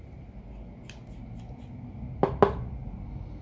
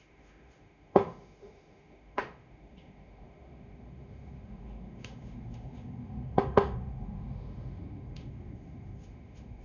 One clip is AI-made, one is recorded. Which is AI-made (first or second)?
second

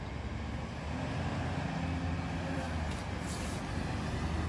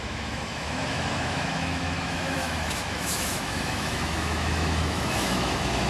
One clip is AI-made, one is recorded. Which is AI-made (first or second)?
second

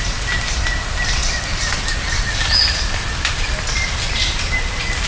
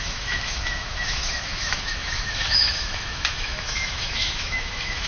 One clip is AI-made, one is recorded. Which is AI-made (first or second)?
second